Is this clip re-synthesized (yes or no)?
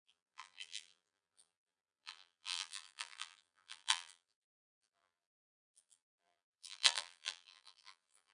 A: yes